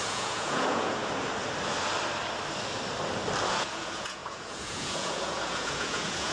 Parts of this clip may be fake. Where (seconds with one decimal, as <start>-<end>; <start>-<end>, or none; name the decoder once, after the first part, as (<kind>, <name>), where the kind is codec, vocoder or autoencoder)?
0.0-1.0 (vocoder, Vocos); 3.5-6.3